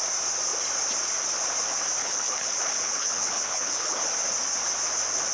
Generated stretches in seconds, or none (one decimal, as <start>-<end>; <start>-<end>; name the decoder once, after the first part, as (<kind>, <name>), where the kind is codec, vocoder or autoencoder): 2.0-4.1 (codec, HILCodec)